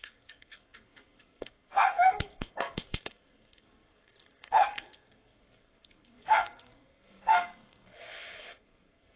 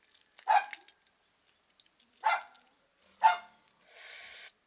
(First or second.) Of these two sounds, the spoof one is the first